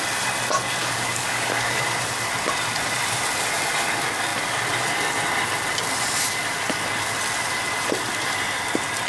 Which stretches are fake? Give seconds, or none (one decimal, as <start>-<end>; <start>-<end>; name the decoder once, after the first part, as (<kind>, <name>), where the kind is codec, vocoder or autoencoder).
0.8-1.8 (codec, DAC)